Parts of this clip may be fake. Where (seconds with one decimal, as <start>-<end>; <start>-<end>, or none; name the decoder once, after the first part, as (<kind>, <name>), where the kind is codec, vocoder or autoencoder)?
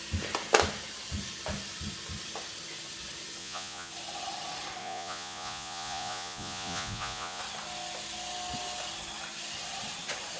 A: 3.4-3.9 (vocoder, Vocos); 4.8-7.4